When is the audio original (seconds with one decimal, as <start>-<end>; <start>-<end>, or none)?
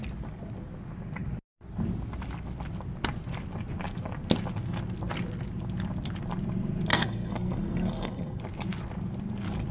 0.0-6.9; 8.4-9.7